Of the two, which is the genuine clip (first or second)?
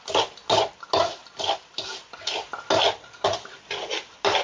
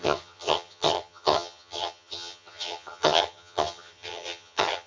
first